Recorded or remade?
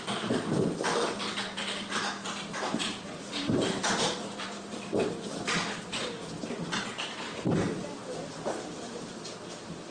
remade